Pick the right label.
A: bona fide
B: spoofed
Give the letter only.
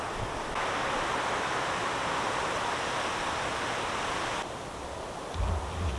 A